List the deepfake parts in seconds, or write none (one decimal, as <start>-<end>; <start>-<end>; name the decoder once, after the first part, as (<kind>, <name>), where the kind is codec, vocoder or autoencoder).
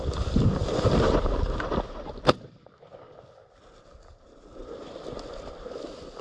0.0-0.6 (vocoder, BigVGAN v2); 4.1-6.2